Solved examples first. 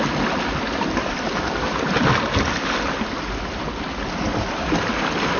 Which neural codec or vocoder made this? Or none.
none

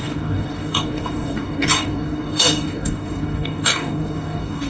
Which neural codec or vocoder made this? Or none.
codec, DAC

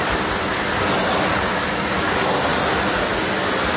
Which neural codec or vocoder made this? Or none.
none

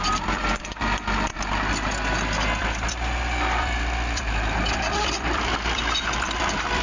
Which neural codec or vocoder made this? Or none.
vocoder, BigVGAN v2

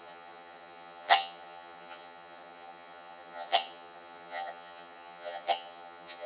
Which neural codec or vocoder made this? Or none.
vocoder, HiFi-GAN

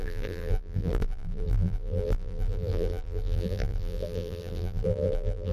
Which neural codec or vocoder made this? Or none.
vocoder, BigVGAN v2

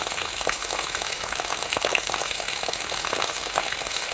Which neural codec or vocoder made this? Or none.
autoencoder, DAC-VAE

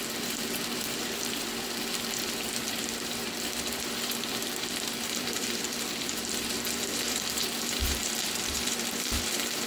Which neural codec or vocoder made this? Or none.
vocoder, BigVGAN v2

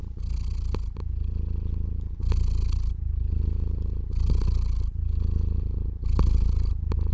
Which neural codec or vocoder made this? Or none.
none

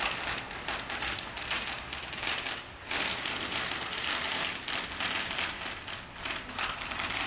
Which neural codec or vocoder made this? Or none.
none